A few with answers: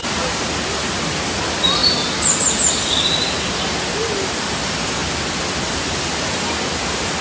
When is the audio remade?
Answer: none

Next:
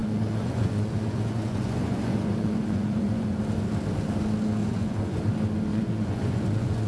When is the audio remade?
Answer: 0.0-3.4 (vocoder, Vocos); 4.6-5.2; 5.7-6.9